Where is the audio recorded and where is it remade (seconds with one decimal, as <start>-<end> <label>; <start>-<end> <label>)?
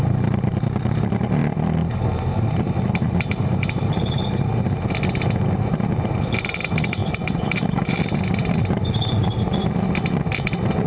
0.0-1.4 remade; 1.4-2.9 recorded; 2.9-9.3 remade; 9.3-10.3 recorded; 10.3-10.9 remade